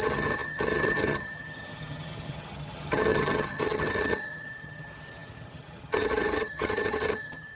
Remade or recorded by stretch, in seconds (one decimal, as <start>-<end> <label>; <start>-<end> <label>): 0.0-7.5 remade